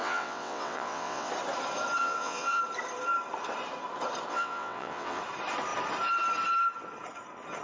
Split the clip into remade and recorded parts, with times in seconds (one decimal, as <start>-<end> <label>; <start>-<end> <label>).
0.0-1.3 remade; 1.3-2.0 recorded; 2.0-2.6 remade; 2.6-4.3 recorded; 4.3-5.2 remade; 5.2-7.6 recorded